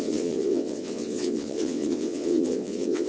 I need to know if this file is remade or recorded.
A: remade